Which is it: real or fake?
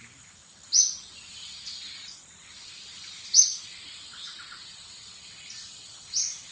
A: real